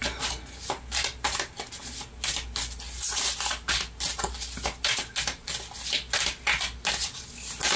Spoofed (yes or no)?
no